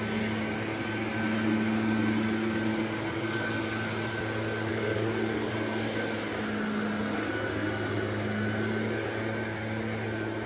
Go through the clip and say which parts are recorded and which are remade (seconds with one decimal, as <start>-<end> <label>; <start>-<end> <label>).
0.0-2.7 recorded; 2.7-3.5 remade; 3.5-4.7 recorded; 4.7-5.5 remade; 5.5-10.5 recorded